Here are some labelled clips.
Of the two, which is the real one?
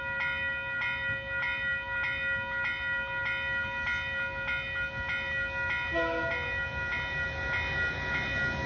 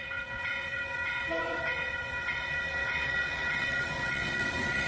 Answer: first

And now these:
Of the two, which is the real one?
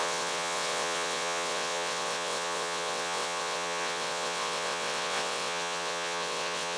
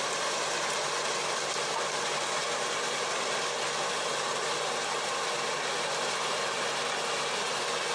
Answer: second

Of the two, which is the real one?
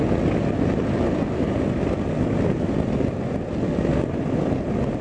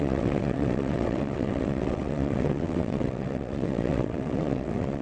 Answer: first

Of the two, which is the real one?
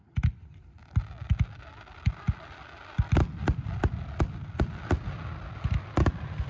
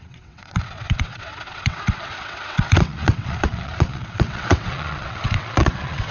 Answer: first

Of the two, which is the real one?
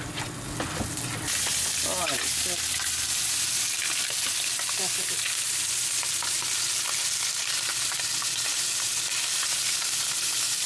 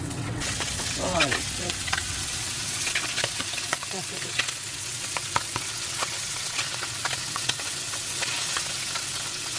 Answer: first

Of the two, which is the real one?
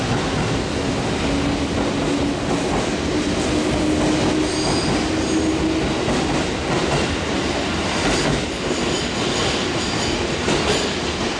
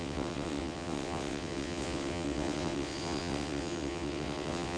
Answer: first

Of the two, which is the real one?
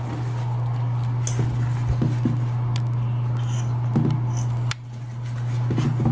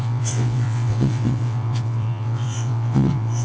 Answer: first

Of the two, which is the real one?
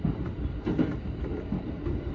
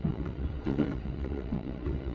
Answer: first